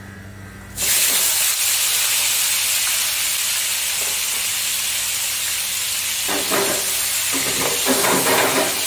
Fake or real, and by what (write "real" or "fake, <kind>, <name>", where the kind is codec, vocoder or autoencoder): real